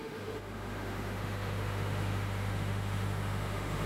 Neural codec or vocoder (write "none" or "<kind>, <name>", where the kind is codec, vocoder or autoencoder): autoencoder, DAC-VAE